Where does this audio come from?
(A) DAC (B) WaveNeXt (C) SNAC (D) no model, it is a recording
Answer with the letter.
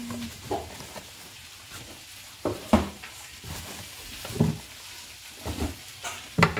D